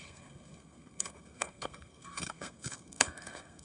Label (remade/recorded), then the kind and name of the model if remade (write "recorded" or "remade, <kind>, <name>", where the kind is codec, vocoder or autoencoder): remade, codec, SNAC